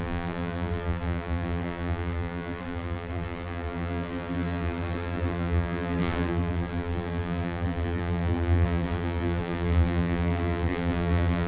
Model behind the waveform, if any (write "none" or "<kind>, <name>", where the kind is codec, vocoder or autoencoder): vocoder, BigVGAN v2